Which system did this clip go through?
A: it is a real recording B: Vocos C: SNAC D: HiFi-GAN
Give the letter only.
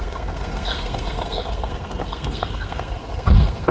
C